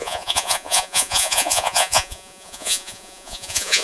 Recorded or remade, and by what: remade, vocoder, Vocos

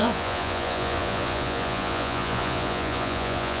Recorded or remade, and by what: remade, vocoder, Vocos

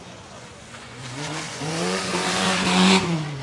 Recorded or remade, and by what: remade, vocoder, Vocos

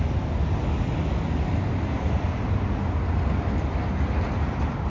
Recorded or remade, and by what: recorded